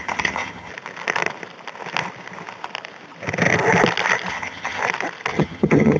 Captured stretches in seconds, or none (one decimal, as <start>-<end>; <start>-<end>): 0.7-4.3; 4.8-5.3